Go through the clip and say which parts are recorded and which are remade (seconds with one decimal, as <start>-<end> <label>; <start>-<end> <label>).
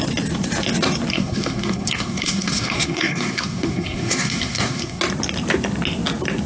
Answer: 0.0-1.1 recorded; 1.1-5.0 remade; 5.0-6.5 recorded